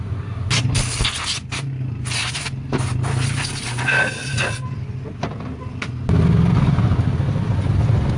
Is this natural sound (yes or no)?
yes